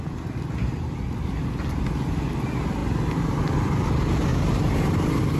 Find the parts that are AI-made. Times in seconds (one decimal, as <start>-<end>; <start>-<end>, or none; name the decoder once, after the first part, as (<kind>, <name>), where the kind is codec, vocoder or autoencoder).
4.3-5.4 (vocoder, BigVGAN v2)